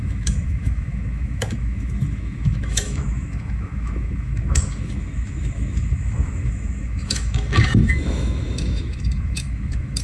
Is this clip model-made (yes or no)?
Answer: yes